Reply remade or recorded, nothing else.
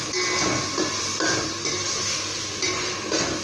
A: recorded